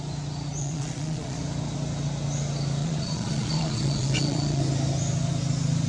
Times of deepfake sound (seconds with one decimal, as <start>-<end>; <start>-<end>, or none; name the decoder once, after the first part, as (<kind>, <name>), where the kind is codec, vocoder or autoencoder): 0.6-1.4 (vocoder, Vocos); 2.8-4.6